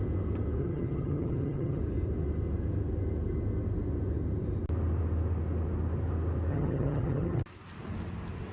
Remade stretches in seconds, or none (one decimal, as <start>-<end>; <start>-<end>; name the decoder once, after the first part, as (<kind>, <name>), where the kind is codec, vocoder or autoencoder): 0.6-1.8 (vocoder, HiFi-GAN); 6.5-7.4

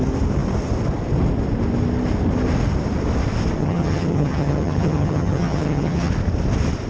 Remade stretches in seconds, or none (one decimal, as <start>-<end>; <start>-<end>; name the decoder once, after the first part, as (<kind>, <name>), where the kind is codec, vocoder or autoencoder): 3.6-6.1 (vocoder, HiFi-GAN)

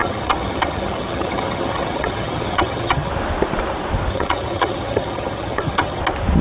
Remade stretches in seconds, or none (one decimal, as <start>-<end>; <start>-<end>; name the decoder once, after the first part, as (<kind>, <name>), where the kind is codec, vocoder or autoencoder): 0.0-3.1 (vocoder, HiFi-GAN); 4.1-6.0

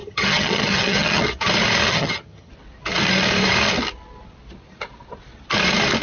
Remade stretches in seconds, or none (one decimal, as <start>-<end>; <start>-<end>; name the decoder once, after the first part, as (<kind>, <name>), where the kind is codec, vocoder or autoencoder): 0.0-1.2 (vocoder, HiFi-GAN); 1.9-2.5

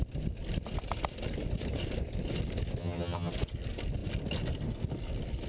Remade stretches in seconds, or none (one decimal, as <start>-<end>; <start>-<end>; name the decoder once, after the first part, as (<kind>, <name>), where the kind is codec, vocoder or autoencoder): 2.8-3.3 (vocoder, HiFi-GAN)

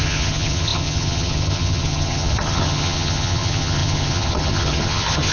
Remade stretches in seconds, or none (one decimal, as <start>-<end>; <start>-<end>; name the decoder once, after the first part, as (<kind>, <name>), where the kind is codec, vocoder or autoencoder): 0.0-5.3 (vocoder, HiFi-GAN)

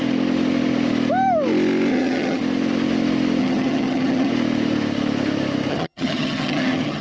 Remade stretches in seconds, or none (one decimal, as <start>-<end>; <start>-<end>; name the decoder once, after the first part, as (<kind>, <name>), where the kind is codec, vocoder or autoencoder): 1.9-2.4 (vocoder, HiFi-GAN); 3.4-4.3; 5.7-7.0